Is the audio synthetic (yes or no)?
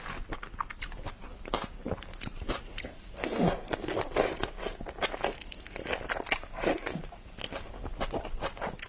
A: no